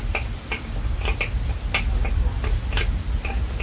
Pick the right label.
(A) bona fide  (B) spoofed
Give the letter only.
A